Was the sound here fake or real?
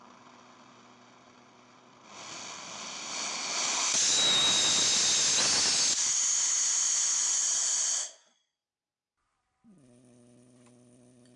real